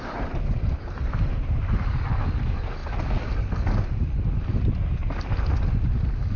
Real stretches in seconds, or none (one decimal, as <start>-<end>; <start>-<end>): 0.0-6.4